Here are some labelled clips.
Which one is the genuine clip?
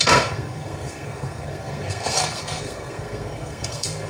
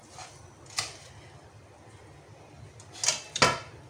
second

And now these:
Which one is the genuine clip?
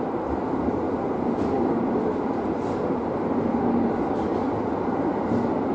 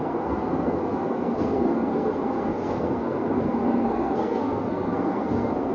first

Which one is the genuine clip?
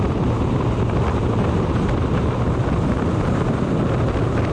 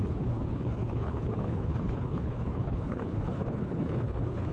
first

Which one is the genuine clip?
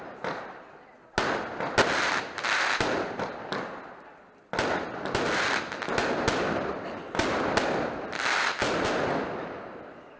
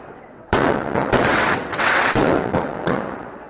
first